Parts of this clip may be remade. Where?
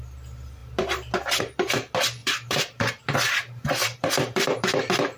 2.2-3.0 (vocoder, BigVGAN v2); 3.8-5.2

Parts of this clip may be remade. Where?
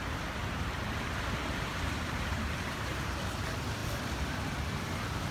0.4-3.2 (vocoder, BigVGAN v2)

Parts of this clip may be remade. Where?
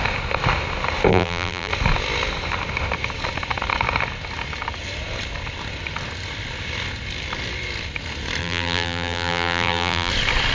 1.1-1.7 (vocoder, BigVGAN v2); 8.4-10.1